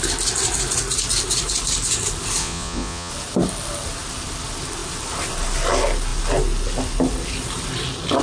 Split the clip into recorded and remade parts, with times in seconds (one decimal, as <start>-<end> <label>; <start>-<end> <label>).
0.0-2.4 recorded; 2.4-3.1 remade; 3.1-8.2 recorded